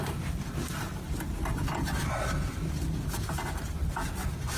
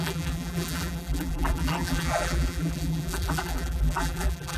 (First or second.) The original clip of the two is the first